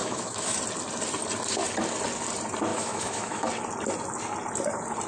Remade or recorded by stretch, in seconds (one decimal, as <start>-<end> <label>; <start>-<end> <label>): 0.0-0.6 remade; 0.6-2.7 recorded; 2.7-3.5 remade; 3.5-5.1 recorded